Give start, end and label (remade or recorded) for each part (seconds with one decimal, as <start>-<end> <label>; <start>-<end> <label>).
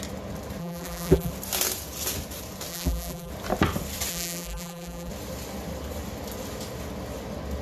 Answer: 0.0-0.6 recorded; 0.6-1.3 remade; 1.3-2.7 recorded; 2.7-3.3 remade; 3.3-4.1 recorded; 4.1-5.1 remade; 5.1-7.6 recorded